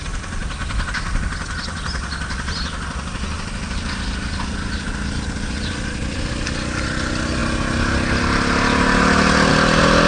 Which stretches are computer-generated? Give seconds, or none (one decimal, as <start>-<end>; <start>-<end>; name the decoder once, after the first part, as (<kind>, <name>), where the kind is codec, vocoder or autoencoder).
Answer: none